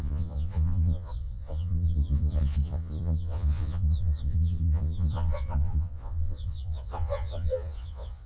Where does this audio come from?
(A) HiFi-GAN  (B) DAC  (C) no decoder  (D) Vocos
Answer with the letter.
D